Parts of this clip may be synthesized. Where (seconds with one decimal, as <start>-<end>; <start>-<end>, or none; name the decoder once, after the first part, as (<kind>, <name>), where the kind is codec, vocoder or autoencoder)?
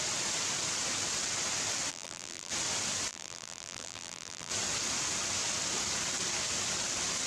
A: 1.9-2.5 (vocoder, BigVGAN v2); 3.1-4.5